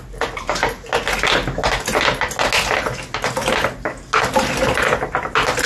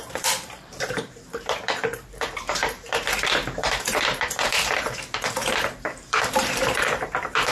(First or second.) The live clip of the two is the first